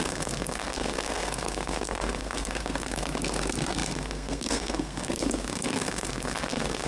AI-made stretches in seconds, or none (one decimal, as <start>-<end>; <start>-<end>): 0.0-6.9